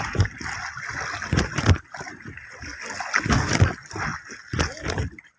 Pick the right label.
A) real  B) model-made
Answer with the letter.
A